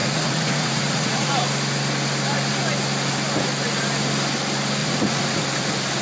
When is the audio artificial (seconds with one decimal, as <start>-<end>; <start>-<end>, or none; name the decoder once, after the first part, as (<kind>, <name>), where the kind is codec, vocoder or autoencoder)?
0.0-1.3 (vocoder, Vocos); 4.8-5.4